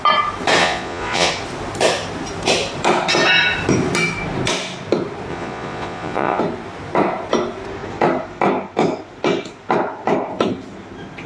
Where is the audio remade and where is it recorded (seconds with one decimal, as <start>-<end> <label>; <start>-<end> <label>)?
0.0-0.6 recorded; 0.6-1.3 remade; 1.3-5.3 recorded; 5.3-6.4 remade; 6.4-11.3 recorded